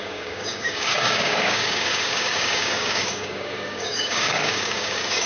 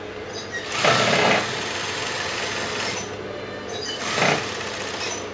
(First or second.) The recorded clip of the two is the second